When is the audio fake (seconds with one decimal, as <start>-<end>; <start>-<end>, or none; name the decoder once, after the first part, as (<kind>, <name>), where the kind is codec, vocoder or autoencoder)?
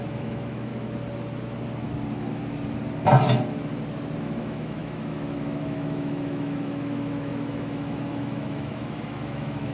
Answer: 0.0-0.7 (autoencoder, DAC-VAE); 4.2-9.7